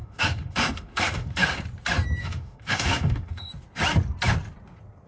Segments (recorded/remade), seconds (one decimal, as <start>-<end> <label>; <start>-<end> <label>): 0.0-1.6 remade; 1.6-2.2 recorded; 2.2-3.5 remade; 3.5-5.1 recorded

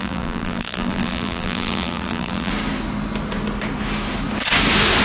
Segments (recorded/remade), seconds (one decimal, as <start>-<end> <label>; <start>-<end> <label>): 0.0-2.5 remade; 2.5-5.0 recorded

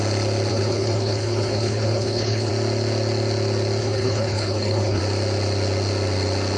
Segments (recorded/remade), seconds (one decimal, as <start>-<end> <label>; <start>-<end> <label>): 0.0-0.5 recorded; 0.5-2.5 remade; 2.5-3.8 recorded; 3.8-5.0 remade; 5.0-6.6 recorded